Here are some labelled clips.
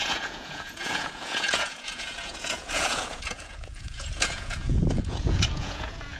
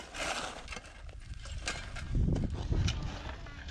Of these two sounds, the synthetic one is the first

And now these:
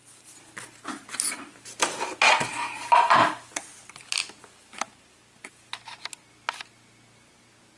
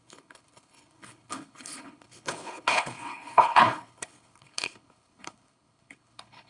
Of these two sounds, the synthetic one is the second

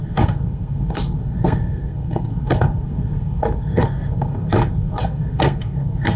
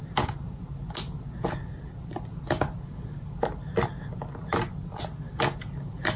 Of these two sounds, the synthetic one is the first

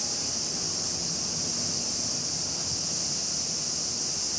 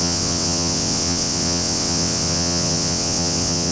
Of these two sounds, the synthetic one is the second